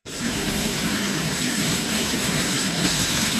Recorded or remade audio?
remade